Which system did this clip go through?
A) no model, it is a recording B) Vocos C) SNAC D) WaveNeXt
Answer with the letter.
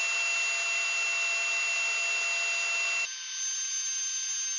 A